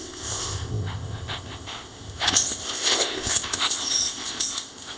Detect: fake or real fake